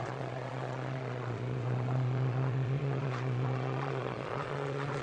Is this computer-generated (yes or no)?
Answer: yes